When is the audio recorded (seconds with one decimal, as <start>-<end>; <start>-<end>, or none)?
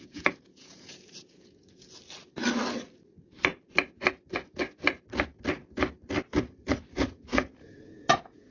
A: 2.0-6.9